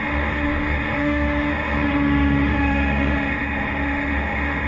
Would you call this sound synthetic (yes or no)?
yes